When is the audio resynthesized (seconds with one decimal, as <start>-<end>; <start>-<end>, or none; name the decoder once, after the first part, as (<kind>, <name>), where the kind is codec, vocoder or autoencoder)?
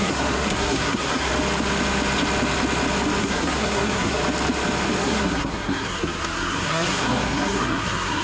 0.0-1.3 (codec, SNAC); 3.2-4.2; 5.0-8.2